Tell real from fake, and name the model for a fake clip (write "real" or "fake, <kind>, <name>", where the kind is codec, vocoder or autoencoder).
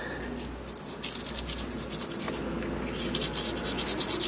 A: real